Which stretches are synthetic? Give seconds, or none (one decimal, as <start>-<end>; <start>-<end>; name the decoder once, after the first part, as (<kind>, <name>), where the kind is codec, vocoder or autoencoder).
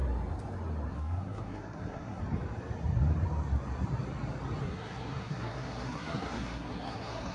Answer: 0.9-2.2 (codec, SNAC); 4.6-7.3